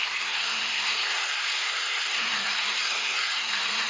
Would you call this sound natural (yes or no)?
no